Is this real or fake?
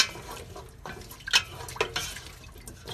real